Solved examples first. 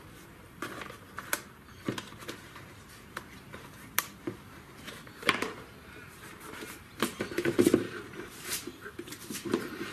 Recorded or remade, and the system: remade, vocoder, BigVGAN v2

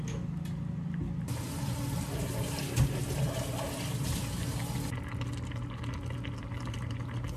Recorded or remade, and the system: recorded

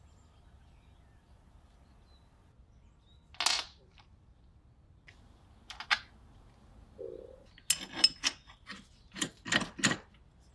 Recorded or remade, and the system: recorded